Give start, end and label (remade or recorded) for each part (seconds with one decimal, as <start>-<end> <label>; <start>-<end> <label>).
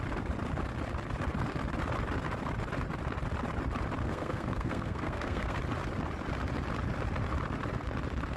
0.0-4.0 recorded; 4.0-5.6 remade; 5.6-8.4 recorded